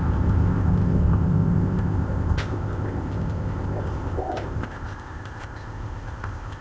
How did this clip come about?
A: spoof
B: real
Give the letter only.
A